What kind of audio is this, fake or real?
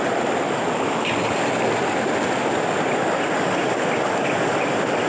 real